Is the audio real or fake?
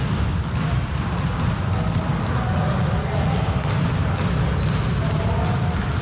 real